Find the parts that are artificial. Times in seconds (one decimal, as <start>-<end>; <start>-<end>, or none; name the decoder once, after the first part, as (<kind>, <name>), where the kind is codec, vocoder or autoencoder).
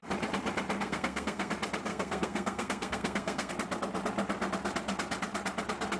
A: 0.8-1.5 (codec, SNAC); 1.9-3.5